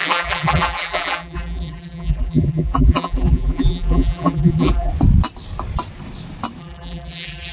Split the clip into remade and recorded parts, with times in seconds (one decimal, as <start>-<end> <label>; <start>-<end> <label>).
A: 0.0-4.9 remade; 4.9-6.6 recorded; 6.6-7.5 remade